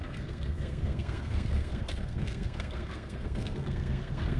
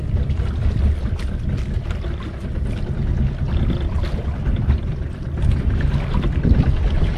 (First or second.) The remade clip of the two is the first